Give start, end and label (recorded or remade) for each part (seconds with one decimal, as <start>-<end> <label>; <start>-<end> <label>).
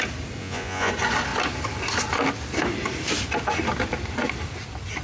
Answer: 0.0-0.4 recorded; 0.4-0.9 remade; 0.9-5.0 recorded